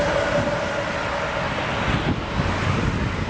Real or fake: real